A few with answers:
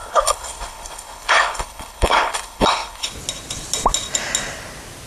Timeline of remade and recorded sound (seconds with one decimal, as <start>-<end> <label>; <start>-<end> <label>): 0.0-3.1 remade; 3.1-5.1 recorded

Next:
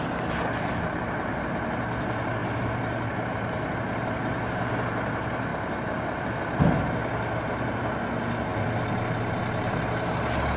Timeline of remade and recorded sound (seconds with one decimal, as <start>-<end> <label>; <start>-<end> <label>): 0.0-10.6 recorded

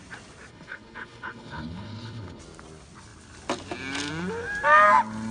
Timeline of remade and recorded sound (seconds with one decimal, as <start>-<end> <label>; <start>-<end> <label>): 0.0-0.5 recorded; 0.5-2.4 remade; 2.4-5.3 recorded

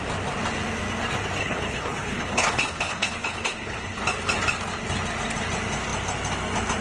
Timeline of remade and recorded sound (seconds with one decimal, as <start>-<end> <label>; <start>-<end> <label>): 0.0-1.4 recorded; 1.4-4.0 remade; 4.0-6.8 recorded

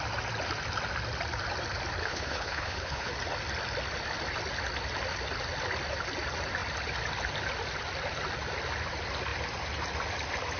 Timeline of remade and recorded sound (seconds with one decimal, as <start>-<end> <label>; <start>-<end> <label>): 0.0-2.0 recorded; 2.0-3.1 remade; 3.1-10.6 recorded

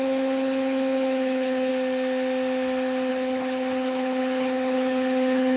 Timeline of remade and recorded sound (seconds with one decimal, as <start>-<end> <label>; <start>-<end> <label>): 0.0-1.7 remade; 1.7-3.1 recorded; 3.1-5.6 remade

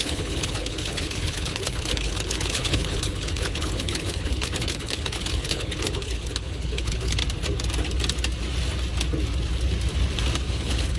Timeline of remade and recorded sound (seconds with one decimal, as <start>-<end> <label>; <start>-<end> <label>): 0.0-7.2 remade; 7.2-10.5 recorded; 10.5-11.0 remade